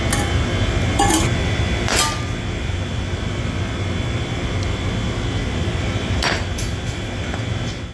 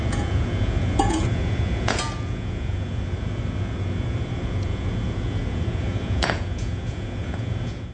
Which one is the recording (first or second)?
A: first